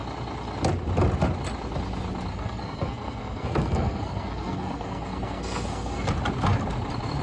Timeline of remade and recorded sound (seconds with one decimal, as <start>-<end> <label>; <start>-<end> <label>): 0.0-2.3 recorded; 2.3-6.1 remade; 6.1-7.2 recorded